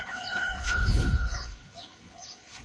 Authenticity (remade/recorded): remade